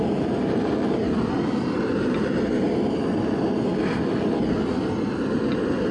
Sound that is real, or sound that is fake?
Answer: real